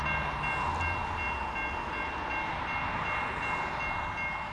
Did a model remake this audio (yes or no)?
no